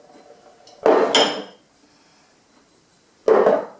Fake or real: real